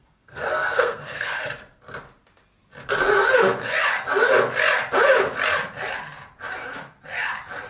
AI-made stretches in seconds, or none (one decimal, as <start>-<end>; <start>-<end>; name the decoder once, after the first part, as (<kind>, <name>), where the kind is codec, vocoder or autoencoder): 0.0-1.4 (codec, SNAC)